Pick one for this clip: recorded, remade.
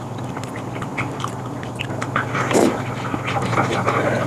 recorded